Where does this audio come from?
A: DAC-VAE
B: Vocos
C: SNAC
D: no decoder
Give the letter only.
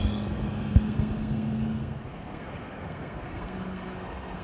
C